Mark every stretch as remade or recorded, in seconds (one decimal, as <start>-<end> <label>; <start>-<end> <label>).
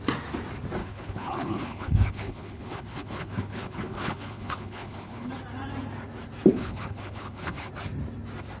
0.0-0.8 recorded; 0.8-5.3 remade; 5.3-6.5 recorded; 6.5-7.7 remade; 7.7-8.6 recorded